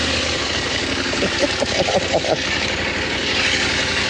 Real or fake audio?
fake